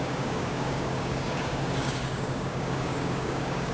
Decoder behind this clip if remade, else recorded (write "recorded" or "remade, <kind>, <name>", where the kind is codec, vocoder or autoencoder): remade, codec, DAC